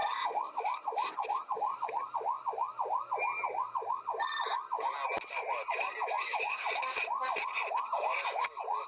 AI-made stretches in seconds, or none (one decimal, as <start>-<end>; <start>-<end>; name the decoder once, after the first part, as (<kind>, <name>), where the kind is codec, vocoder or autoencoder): none

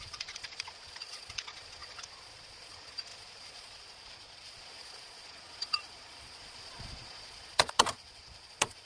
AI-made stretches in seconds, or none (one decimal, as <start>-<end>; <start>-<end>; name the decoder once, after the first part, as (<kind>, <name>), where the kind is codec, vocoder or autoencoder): 0.0-8.9 (vocoder, Vocos)

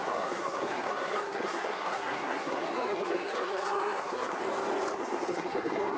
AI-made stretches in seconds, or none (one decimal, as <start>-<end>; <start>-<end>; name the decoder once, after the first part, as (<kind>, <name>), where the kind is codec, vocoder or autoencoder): 0.0-4.4 (codec, SNAC); 5.0-6.0

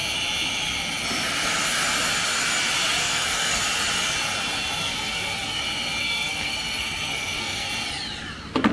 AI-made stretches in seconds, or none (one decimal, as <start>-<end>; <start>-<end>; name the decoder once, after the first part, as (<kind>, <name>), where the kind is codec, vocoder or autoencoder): 3.0-3.6 (codec, SNAC); 4.8-5.6; 6.0-7.7

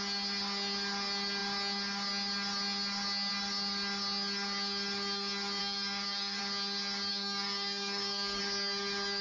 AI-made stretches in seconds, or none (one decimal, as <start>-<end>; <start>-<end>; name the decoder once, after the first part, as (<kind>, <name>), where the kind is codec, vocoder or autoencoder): 5.6-6.4 (codec, DAC); 7.1-8.4